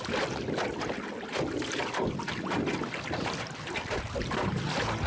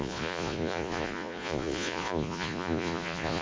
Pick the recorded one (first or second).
first